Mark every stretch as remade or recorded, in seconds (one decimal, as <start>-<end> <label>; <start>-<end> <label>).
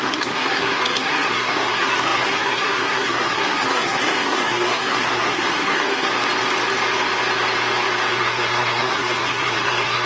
0.0-6.1 remade; 6.1-8.1 recorded; 8.1-10.1 remade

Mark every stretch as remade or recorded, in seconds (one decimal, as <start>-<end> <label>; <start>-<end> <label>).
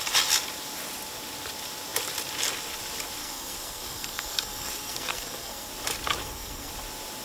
0.0-3.2 recorded; 3.2-5.7 remade; 5.7-6.2 recorded; 6.2-6.7 remade; 6.7-7.2 recorded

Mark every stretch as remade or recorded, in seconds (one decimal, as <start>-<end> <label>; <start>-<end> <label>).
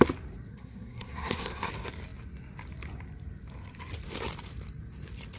0.0-0.5 recorded; 0.5-1.7 remade; 1.7-5.4 recorded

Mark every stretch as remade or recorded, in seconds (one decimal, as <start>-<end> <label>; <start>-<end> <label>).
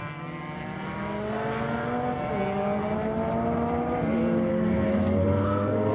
0.0-4.5 recorded; 4.5-5.9 remade